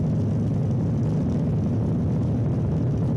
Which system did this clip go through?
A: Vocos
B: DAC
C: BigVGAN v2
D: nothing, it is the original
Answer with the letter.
D